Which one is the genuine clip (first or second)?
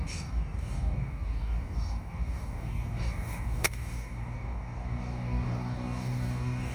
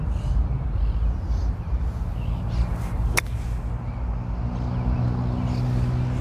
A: second